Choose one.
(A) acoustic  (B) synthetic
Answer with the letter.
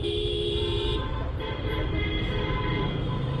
B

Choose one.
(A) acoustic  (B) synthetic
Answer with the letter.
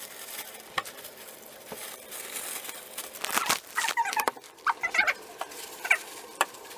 B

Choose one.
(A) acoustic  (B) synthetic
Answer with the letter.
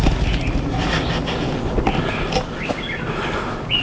A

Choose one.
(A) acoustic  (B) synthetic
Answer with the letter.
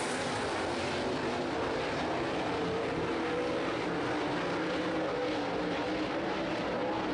A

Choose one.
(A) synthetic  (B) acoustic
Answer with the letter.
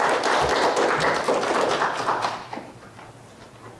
B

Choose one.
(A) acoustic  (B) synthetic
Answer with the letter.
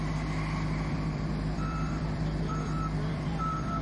B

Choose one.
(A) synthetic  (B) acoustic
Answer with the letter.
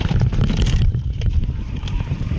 A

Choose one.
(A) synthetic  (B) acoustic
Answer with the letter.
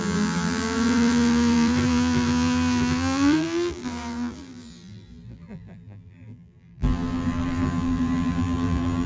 A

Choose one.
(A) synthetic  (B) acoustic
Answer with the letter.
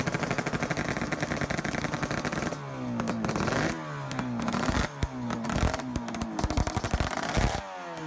B